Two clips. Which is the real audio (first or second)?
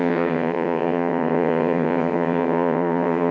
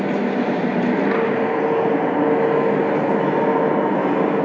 second